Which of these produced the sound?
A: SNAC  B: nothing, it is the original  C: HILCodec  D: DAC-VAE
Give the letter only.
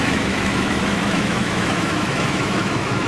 D